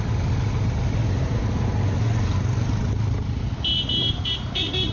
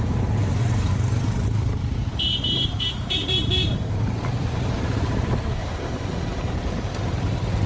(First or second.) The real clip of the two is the first